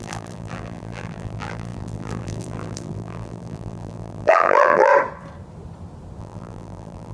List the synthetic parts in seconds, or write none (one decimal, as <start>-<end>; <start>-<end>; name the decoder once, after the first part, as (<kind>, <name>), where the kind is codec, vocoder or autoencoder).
0.0-4.9 (vocoder, BigVGAN v2); 6.2-7.1

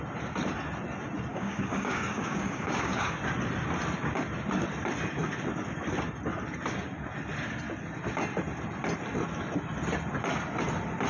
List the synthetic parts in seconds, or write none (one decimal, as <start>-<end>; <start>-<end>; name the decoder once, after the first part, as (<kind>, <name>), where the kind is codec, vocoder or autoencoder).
1.3-3.2 (codec, DAC)

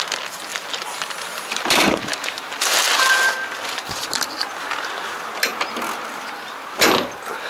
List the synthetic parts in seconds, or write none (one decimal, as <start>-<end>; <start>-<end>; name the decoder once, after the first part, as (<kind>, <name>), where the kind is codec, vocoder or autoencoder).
0.5-2.8 (vocoder, BigVGAN v2)

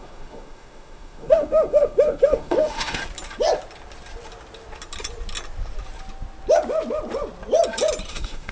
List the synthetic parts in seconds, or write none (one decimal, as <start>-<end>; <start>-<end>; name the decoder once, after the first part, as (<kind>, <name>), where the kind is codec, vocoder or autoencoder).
0.0-3.0 (autoencoder, DAC-VAE); 8.1-8.5

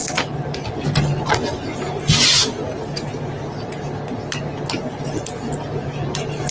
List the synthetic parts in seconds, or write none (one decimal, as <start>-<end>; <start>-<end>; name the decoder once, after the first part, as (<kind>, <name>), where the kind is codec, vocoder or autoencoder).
none

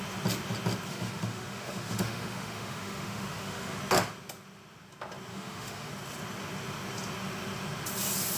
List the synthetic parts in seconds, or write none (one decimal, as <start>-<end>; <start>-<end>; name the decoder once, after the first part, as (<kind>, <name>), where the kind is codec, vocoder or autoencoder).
0.9-3.8 (autoencoder, DAC-VAE); 5.3-5.9

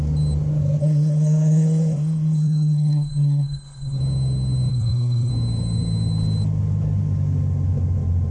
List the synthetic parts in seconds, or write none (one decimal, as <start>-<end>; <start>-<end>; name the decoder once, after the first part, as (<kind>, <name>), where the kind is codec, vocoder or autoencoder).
0.8-4.0 (codec, SNAC); 4.7-5.3

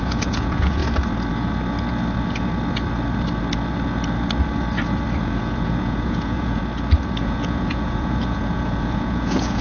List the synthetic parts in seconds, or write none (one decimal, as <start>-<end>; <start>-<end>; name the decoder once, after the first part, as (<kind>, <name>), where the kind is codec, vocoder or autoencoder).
0.0-0.8 (vocoder, Vocos); 5.2-6.6; 7.2-9.6